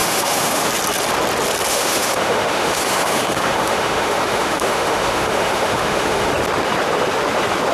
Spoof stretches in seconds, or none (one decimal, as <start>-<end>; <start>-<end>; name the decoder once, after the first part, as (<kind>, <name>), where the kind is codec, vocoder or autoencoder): 0.0-0.7 (autoencoder, DAC-VAE); 1.7-6.3